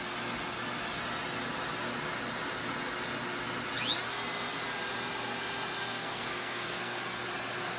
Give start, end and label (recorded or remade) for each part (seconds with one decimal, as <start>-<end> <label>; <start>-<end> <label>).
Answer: 0.0-5.9 recorded; 5.9-7.0 remade; 7.0-7.8 recorded